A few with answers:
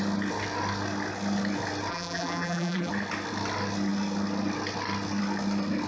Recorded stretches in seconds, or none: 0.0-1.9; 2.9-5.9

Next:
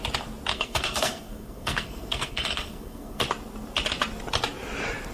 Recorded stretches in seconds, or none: 0.0-0.5; 3.2-5.1